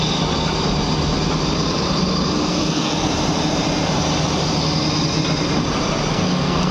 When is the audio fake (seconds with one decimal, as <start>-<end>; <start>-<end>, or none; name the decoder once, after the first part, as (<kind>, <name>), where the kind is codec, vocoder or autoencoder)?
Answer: 2.4-3.1 (codec, SNAC); 6.1-6.7

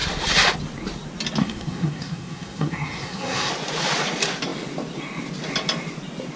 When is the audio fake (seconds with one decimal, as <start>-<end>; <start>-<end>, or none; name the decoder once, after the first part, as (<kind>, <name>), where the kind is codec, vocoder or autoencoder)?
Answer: 1.4-3.5 (codec, SNAC)

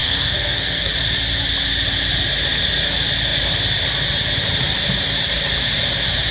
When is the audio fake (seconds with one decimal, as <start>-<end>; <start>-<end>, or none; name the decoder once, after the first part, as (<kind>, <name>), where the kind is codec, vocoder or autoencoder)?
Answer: 0.0-0.9 (codec, SNAC)

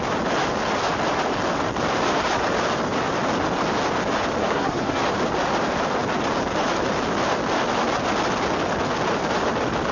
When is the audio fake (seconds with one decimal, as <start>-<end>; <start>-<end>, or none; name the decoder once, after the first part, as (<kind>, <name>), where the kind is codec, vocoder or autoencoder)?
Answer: 4.4-5.0 (codec, SNAC)

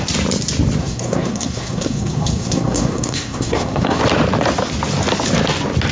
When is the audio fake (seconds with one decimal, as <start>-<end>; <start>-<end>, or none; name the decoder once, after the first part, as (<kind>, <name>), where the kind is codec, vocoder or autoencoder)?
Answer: 0.8-4.0 (codec, SNAC)

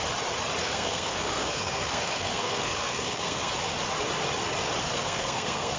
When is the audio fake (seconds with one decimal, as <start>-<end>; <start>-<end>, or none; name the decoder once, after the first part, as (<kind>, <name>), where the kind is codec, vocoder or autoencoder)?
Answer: 0.6-3.5 (codec, SNAC); 4.8-5.8

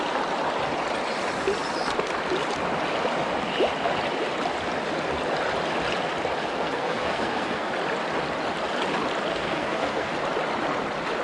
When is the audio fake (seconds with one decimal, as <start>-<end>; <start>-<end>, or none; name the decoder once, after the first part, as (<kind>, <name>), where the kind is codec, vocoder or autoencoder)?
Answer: 6.4-7.7 (codec, SNAC); 9.3-10.1

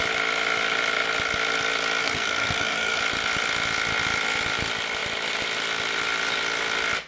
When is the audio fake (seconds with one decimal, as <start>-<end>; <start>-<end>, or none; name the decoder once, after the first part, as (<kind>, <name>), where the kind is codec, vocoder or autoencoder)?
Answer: 2.0-3.0 (codec, SNAC)